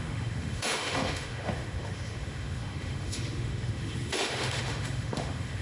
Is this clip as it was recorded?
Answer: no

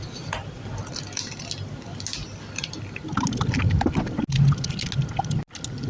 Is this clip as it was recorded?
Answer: yes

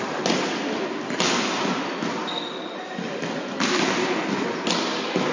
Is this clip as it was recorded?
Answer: yes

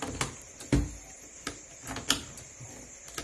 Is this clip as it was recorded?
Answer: yes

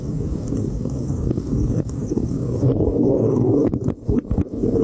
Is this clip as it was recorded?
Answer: no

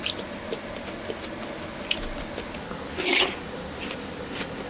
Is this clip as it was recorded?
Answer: yes